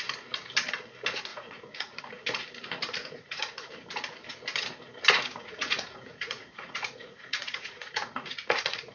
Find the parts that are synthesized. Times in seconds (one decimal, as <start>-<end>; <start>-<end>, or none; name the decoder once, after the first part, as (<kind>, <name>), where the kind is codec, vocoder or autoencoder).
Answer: 1.3-2.0 (vocoder, Vocos); 3.0-3.7; 5.3-8.9

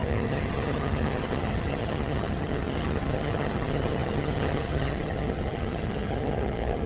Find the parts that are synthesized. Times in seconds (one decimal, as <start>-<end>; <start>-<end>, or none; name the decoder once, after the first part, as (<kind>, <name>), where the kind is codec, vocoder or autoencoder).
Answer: 0.0-6.9 (vocoder, HiFi-GAN)

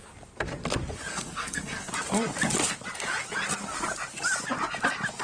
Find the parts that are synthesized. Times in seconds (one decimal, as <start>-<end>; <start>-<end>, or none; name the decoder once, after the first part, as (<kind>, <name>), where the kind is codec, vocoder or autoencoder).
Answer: 1.1-1.9 (codec, SNAC)

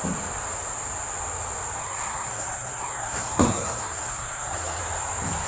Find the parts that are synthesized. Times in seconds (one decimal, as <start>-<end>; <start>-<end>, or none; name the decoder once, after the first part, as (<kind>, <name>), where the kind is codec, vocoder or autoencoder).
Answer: 1.8-4.8 (codec, SNAC)